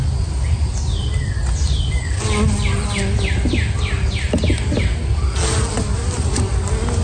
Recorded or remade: recorded